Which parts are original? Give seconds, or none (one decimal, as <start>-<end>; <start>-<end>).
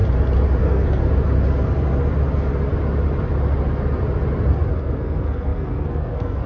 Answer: 0.0-0.6; 1.0-4.8